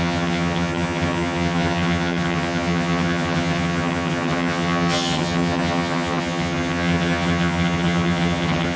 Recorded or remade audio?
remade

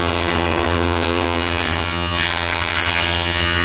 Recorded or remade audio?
remade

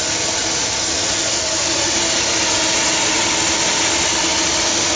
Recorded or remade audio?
recorded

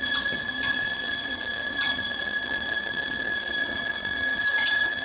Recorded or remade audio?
remade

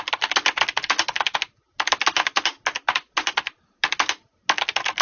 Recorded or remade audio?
recorded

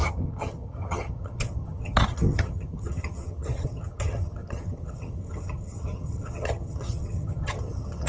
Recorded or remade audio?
remade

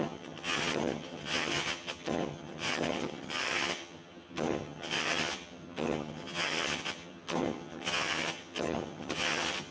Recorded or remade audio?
remade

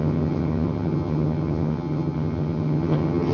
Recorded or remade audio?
remade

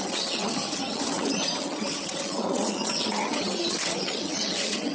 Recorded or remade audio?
remade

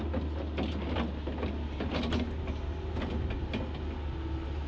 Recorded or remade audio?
recorded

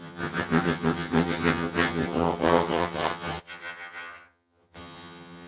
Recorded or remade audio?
remade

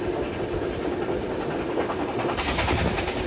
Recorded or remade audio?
recorded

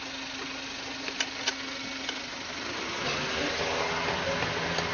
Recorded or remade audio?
recorded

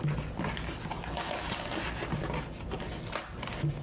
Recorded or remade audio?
recorded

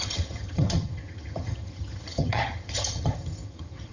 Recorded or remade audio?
remade